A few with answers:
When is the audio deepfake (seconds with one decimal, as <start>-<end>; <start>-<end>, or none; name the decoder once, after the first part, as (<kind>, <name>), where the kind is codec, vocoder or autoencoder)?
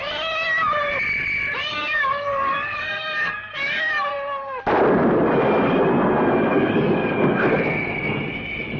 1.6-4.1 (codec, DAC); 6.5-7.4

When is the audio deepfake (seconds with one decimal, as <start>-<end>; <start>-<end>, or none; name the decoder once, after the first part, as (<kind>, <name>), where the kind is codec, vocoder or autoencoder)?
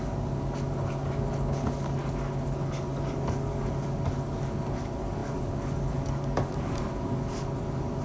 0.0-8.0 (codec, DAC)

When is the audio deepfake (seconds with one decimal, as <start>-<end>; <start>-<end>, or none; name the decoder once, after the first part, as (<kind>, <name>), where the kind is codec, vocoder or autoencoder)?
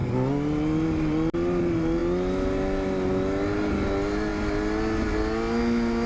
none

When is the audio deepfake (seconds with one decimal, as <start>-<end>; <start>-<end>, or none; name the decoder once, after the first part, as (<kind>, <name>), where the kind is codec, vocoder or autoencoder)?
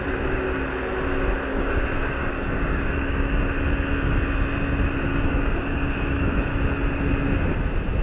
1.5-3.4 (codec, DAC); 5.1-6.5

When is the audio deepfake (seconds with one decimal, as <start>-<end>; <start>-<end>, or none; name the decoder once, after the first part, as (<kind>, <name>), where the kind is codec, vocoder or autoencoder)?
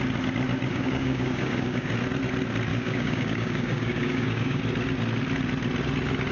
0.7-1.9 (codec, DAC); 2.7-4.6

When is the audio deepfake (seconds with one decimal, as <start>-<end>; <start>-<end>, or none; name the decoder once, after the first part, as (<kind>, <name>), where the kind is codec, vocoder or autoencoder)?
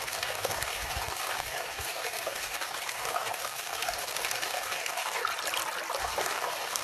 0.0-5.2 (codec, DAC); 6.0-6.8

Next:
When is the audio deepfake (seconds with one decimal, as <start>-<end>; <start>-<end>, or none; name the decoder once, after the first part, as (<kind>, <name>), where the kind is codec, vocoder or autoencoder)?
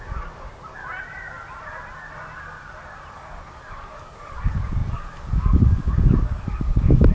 0.0-0.8 (codec, DAC); 3.1-7.1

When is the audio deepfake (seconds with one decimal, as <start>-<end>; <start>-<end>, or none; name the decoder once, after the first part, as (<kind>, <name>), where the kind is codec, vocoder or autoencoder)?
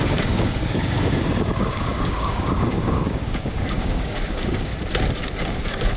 0.0-4.7 (codec, DAC); 5.4-6.0